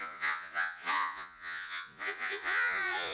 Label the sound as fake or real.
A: fake